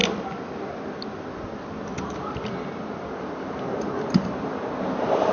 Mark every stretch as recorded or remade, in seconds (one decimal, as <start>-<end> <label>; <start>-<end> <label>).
0.0-3.2 recorded; 3.2-5.3 remade